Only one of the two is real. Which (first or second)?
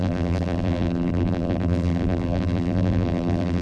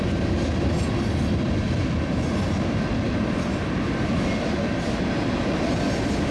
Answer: second